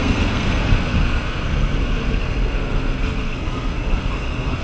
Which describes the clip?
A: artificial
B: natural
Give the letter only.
A